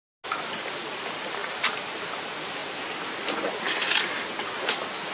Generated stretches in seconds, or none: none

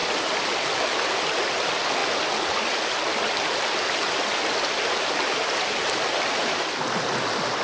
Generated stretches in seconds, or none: 0.0-1.3 (vocoder, BigVGAN v2)

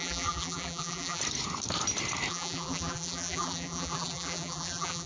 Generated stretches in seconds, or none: 0.0-1.2 (vocoder, BigVGAN v2); 2.3-5.1

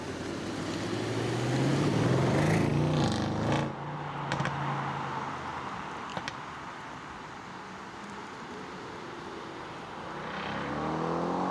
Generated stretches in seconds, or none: 1.7-2.3 (vocoder, BigVGAN v2); 6.1-10.7

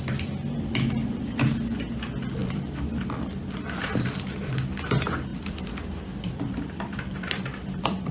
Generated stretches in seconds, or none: 2.4-4.5 (vocoder, BigVGAN v2); 5.3-8.1

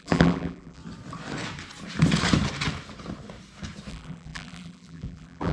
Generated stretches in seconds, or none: 0.0-0.8 (vocoder, BigVGAN v2); 3.9-5.5

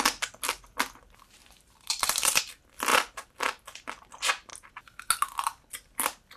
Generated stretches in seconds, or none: 1.4-2.4 (vocoder, BigVGAN v2); 2.9-3.4